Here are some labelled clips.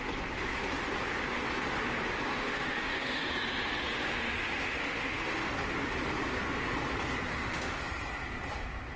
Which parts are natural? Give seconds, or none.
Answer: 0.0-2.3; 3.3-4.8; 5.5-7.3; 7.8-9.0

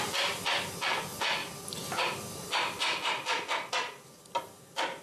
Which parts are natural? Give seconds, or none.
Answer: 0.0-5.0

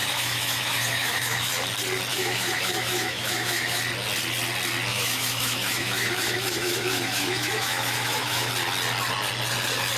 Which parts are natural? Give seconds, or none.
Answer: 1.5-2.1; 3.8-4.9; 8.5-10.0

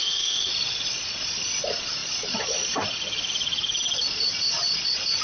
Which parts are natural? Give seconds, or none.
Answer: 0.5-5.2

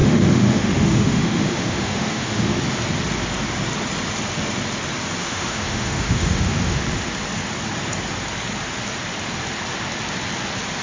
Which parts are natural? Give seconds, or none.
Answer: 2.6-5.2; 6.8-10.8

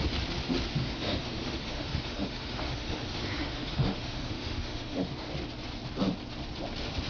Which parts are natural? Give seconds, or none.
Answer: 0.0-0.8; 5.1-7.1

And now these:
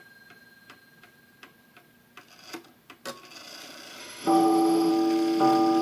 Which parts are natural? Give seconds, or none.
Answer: 0.0-4.0; 4.9-5.8

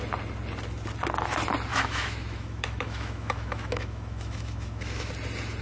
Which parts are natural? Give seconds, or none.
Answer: 0.0-1.7; 5.1-5.6